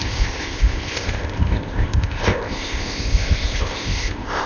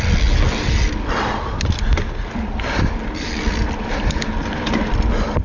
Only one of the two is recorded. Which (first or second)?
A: second